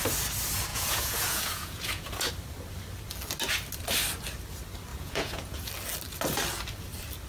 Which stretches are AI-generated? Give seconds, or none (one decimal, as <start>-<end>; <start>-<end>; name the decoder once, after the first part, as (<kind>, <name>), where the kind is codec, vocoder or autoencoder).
0.7-2.3 (vocoder, Vocos); 4.9-5.7